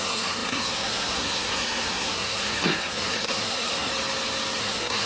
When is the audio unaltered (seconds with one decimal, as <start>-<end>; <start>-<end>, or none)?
3.9-4.6